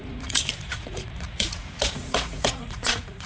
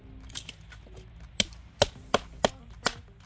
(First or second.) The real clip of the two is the second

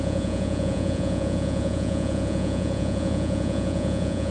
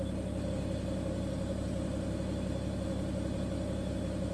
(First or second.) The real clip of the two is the second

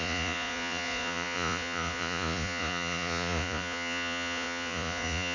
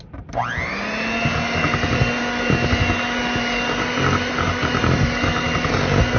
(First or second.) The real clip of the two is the second